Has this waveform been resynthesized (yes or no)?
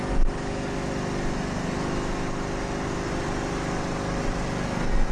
no